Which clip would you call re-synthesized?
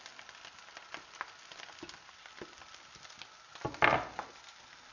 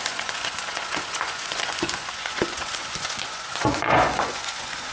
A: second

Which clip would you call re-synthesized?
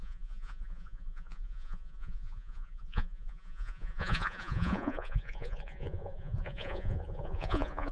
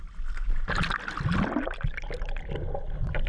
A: first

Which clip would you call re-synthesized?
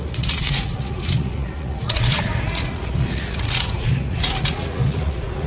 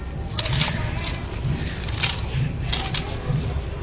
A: first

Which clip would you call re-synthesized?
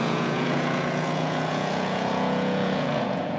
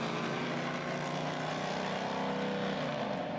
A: first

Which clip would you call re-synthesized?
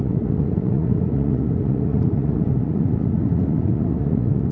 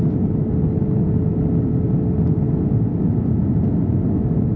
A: first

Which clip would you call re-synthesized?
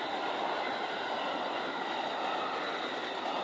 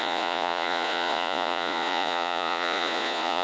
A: second